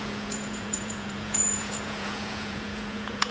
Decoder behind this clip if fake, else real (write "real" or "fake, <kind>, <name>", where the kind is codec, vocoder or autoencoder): fake, vocoder, Vocos